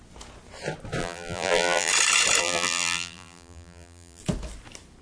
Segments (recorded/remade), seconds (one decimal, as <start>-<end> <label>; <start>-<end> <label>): 0.0-1.0 recorded; 1.0-1.9 remade; 1.9-2.4 recorded; 2.4-4.2 remade; 4.2-5.0 recorded